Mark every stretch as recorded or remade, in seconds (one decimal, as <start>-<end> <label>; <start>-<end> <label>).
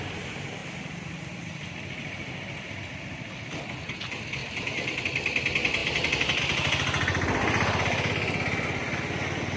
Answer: 0.0-0.6 recorded; 0.6-3.7 remade; 3.7-4.4 recorded; 4.4-5.0 remade; 5.0-9.6 recorded